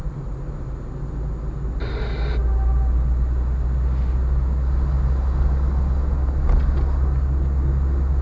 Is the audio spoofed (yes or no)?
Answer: no